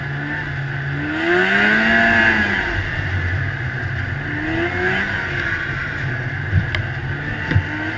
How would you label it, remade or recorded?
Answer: recorded